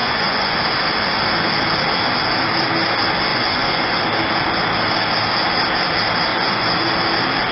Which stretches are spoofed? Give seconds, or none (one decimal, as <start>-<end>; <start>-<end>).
0.0-0.6; 3.3-4.0; 6.3-6.9